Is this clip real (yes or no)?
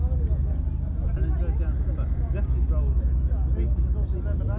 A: yes